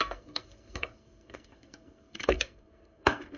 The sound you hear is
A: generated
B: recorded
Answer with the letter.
A